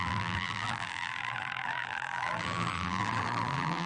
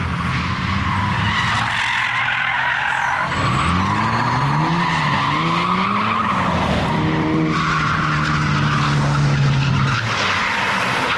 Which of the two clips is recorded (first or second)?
second